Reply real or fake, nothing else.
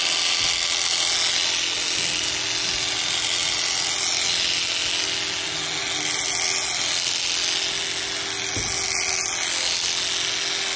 real